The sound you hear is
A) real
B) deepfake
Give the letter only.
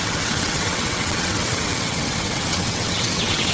B